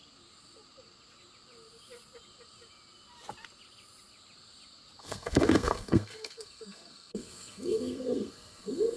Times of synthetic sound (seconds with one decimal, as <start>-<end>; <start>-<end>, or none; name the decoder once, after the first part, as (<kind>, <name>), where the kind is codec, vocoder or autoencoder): 5.0-9.0 (codec, SNAC)